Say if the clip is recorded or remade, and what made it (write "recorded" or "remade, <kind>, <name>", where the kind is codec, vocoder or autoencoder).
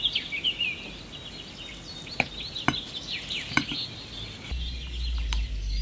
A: recorded